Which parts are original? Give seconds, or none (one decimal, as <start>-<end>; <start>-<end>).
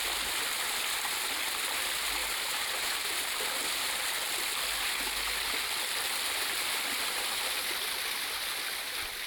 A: 0.0-2.2; 3.4-9.3